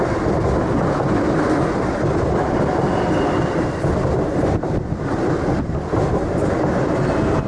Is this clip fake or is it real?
real